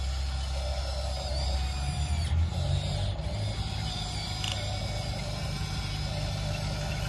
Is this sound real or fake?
real